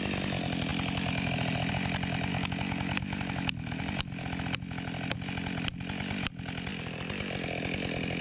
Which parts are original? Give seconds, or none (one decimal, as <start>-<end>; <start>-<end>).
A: 0.0-2.3; 3.8-8.2